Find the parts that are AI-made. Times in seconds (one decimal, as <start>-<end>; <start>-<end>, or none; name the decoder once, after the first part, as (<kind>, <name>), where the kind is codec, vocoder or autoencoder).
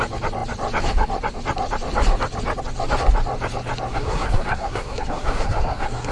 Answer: 3.9-6.1 (codec, SNAC)